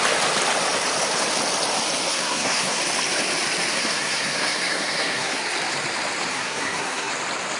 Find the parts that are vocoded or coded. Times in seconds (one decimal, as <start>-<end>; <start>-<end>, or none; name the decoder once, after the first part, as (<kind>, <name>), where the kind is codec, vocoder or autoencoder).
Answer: 2.1-2.8 (codec, SNAC); 3.7-5.4; 6.3-7.1